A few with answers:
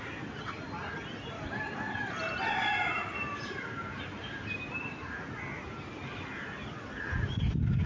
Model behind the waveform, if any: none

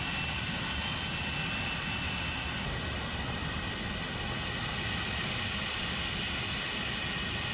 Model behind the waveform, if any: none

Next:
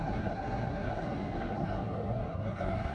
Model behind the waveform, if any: codec, SNAC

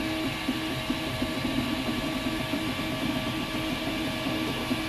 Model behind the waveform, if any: none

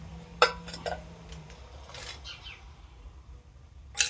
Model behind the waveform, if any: none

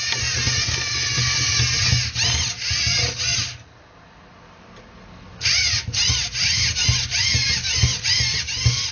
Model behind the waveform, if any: none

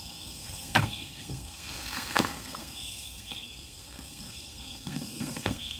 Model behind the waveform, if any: codec, SNAC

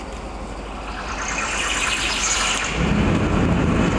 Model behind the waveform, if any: none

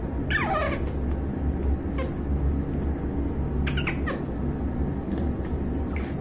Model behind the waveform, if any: none